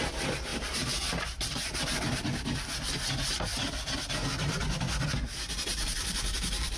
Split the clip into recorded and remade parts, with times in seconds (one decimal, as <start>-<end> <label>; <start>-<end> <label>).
0.0-0.5 recorded; 0.5-1.8 remade; 1.8-5.7 recorded; 5.7-6.8 remade